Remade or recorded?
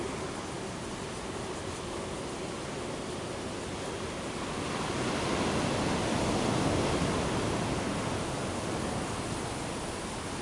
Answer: recorded